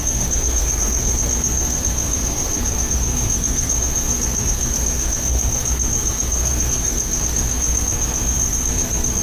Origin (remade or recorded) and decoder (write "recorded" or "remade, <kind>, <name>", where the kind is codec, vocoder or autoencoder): remade, codec, SNAC